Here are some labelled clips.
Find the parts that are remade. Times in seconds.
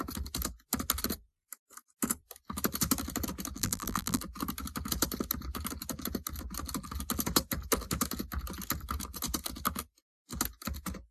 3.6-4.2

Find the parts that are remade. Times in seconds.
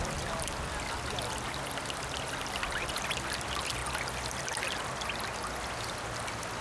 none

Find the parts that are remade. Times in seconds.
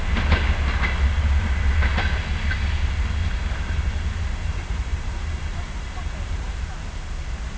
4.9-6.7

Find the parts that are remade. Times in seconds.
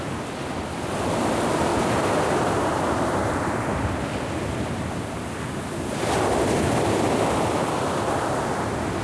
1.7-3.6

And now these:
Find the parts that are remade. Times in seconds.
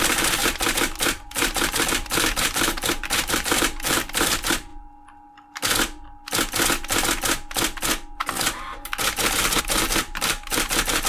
0.0-4.7; 9.6-11.1